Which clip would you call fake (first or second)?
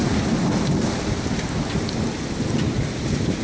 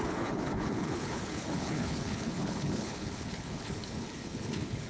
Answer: second